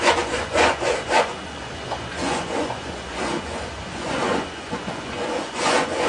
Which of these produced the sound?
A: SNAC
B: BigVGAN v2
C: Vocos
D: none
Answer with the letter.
C